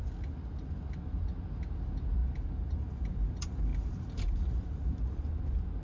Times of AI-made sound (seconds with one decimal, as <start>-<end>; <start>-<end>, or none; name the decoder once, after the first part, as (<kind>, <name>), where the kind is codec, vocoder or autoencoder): 2.2-3.1 (vocoder, BigVGAN v2); 3.7-5.3